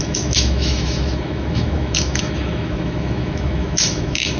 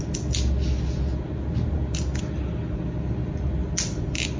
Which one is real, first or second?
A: second